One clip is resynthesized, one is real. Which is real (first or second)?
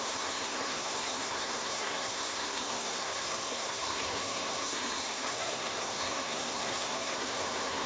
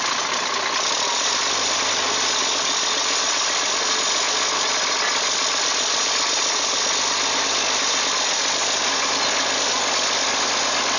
second